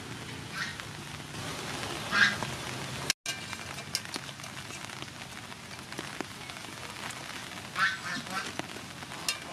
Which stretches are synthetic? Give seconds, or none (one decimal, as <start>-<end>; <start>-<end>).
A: none